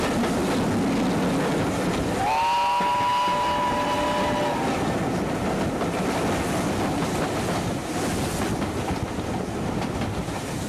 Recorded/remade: recorded